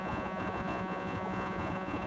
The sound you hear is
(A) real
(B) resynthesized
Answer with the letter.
B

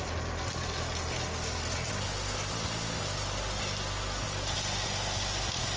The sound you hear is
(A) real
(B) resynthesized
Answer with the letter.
A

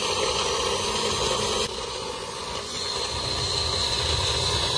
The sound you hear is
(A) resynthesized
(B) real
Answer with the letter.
A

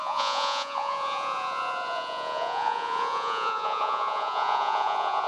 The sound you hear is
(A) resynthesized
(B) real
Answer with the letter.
A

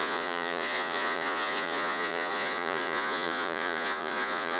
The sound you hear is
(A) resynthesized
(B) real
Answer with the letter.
A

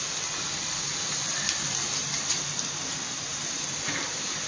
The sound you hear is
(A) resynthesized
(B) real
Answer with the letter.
B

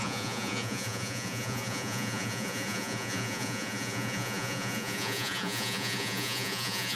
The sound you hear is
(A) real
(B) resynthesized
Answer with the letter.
B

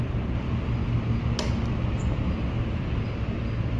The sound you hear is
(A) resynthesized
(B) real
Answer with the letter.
B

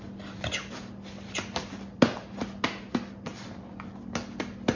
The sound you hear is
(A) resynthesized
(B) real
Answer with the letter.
B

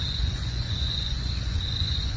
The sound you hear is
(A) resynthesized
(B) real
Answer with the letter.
A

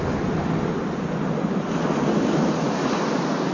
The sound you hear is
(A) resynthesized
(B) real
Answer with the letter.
B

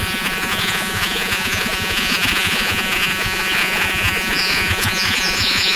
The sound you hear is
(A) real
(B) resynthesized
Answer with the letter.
B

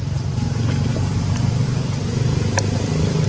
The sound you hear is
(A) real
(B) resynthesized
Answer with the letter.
A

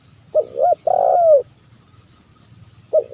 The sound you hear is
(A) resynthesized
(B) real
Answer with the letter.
B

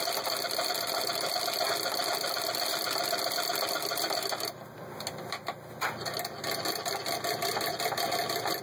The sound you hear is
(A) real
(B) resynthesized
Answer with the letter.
A